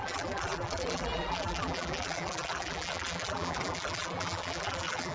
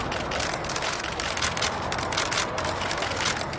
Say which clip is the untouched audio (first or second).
second